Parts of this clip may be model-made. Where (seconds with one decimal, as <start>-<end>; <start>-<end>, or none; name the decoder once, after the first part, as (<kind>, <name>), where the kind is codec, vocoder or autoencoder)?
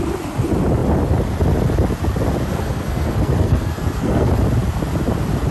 2.5-4.3 (codec, SNAC)